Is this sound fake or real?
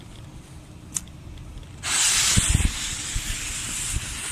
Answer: real